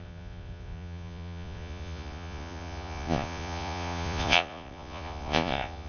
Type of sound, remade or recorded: remade